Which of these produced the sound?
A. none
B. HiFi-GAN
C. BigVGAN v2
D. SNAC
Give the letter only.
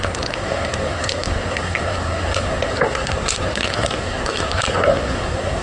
D